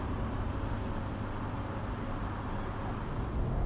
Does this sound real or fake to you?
real